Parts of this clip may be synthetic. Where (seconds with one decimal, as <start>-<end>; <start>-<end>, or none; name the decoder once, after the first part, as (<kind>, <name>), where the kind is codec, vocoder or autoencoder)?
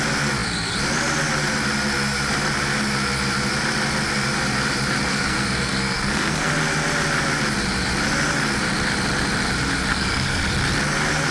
5.1-6.5 (codec, SNAC); 9.9-10.5